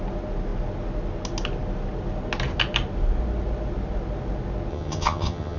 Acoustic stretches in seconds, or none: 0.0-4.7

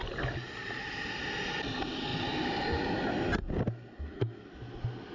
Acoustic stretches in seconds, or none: 0.0-5.1

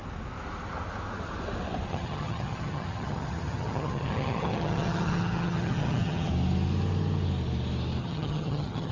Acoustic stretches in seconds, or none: 0.0-1.9; 6.3-8.0

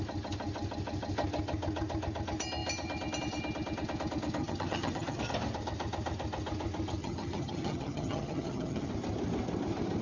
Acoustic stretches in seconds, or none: 0.0-4.4; 5.2-7.0; 8.9-10.0

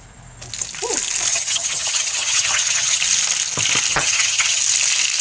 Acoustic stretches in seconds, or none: 0.0-1.3; 3.0-3.9; 4.6-5.2

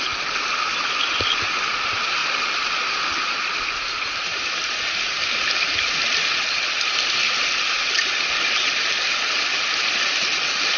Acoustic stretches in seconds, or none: 0.0-10.8